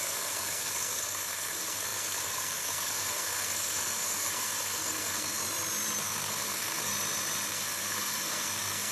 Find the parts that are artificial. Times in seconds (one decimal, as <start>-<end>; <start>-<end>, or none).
0.0-5.4; 6.0-6.9; 7.5-8.9